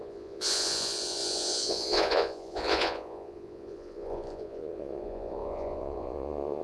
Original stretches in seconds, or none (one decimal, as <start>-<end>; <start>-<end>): none